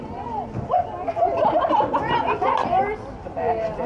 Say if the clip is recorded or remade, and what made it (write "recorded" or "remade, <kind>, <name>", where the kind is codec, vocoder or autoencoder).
recorded